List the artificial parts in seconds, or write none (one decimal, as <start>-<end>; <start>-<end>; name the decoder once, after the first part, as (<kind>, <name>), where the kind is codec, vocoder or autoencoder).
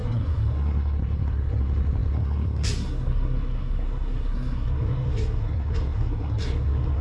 0.0-7.0 (codec, SNAC)